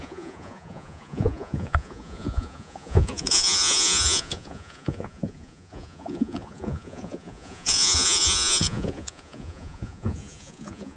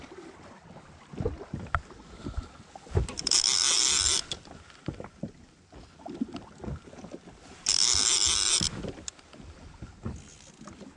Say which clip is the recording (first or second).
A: second